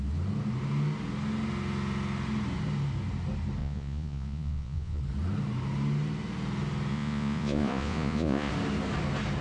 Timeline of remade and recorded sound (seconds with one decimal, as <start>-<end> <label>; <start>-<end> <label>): 0.0-3.6 recorded; 3.6-5.0 remade; 5.0-6.9 recorded; 6.9-8.5 remade; 8.5-9.4 recorded